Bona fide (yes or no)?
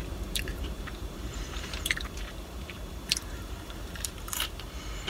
no